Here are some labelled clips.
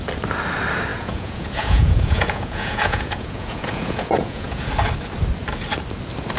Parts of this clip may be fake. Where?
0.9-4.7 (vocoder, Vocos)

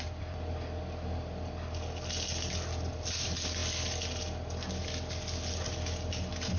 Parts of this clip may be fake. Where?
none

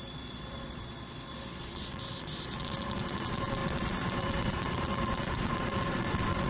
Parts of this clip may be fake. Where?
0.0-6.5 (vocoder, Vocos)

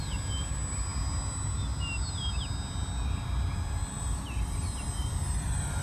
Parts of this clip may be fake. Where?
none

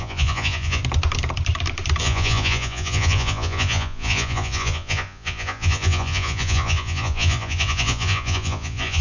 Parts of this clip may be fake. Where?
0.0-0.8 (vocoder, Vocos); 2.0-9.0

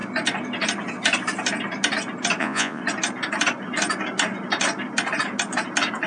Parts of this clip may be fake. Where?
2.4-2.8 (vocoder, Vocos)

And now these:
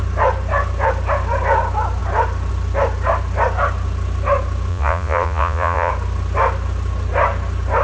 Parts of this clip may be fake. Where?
4.7-5.9 (vocoder, Vocos)